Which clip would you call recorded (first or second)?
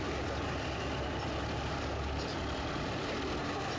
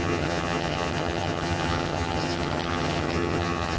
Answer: first